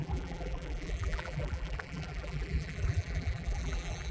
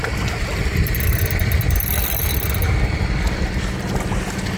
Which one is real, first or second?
second